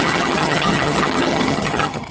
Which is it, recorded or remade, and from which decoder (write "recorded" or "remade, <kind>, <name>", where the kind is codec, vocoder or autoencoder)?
remade, vocoder, HiFi-GAN